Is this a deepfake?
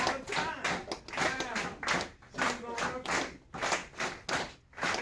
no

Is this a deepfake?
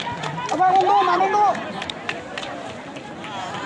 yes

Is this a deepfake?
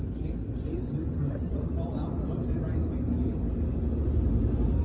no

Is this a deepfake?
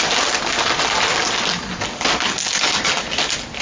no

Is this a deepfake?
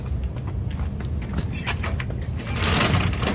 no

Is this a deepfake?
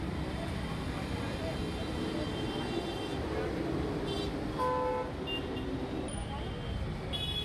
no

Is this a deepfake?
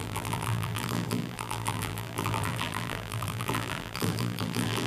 yes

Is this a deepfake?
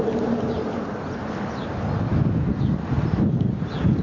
no